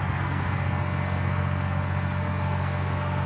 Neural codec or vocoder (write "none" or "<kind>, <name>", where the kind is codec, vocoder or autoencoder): codec, SNAC